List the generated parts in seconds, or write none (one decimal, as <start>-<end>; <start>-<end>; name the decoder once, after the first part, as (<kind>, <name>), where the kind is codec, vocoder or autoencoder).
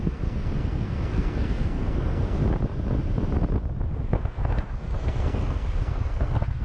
0.0-2.4 (codec, SNAC); 3.9-6.6